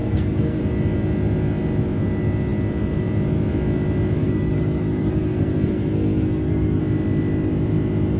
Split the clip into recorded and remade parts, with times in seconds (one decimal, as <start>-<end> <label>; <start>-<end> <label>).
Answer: 0.0-0.6 remade; 0.6-4.2 recorded; 4.2-6.8 remade; 6.8-8.2 recorded